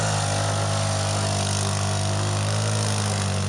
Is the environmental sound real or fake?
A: real